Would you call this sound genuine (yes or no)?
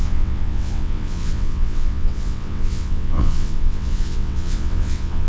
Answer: no